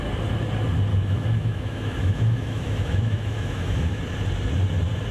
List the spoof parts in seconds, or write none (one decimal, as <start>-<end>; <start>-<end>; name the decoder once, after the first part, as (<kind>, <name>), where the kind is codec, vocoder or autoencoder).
0.9-4.0 (autoencoder, DAC-VAE)